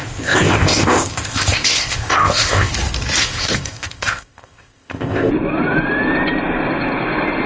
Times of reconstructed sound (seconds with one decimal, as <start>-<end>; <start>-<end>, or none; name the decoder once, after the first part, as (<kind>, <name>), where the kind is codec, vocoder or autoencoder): 0.0-2.7 (codec, ZipCodec); 3.2-5.3